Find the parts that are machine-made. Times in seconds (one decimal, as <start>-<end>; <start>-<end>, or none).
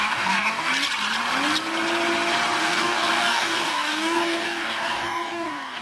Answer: 0.0-0.7; 2.6-5.8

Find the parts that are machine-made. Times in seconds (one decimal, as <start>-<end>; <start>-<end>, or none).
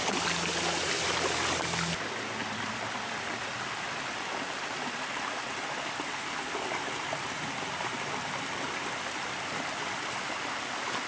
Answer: none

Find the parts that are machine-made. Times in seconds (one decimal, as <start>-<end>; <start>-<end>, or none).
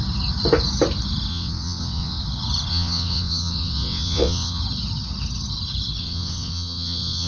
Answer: 1.3-2.2; 2.7-4.6; 6.0-7.3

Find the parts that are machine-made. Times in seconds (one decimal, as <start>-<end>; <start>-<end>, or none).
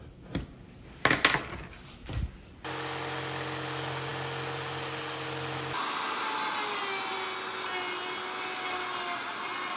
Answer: none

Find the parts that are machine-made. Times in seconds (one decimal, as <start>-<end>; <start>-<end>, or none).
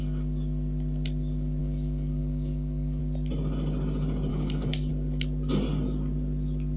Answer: 1.6-3.0; 4.3-4.9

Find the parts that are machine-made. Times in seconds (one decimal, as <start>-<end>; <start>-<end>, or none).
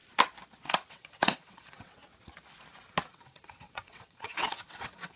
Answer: 0.7-2.0; 3.1-5.2